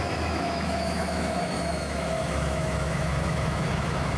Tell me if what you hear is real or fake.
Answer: fake